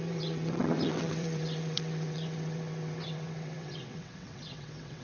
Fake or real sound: fake